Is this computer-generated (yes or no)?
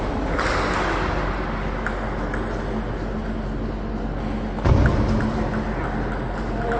no